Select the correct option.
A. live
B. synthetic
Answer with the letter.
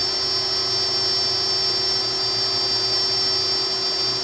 A